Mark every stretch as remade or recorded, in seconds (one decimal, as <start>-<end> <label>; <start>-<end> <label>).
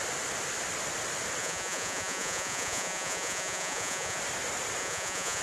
0.0-1.4 recorded; 1.4-4.2 remade; 4.2-4.8 recorded; 4.8-5.4 remade